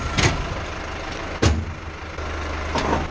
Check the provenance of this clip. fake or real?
real